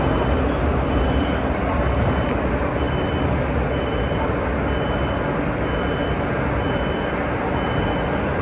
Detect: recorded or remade recorded